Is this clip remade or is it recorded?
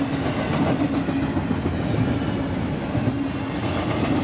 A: recorded